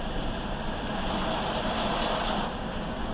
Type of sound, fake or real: real